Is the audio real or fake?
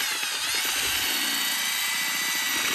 real